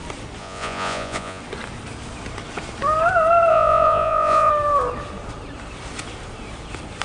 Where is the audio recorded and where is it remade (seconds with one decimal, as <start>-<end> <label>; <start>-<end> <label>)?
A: 0.0-0.4 recorded; 0.4-1.4 remade; 1.4-3.5 recorded; 3.5-4.5 remade; 4.5-7.0 recorded